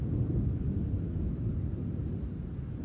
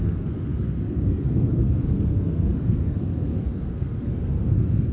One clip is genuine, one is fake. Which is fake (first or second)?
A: second